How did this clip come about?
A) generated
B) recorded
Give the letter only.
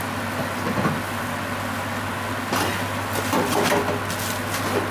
B